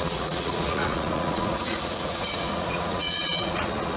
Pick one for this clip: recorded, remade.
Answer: remade